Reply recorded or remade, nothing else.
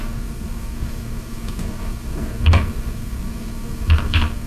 remade